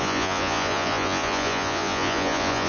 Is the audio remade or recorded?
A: remade